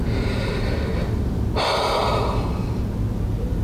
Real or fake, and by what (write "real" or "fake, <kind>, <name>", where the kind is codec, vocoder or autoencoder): real